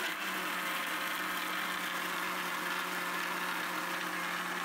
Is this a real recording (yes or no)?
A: yes